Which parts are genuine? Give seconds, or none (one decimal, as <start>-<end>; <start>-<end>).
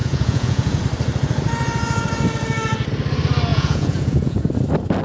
0.8-3.5; 4.5-5.0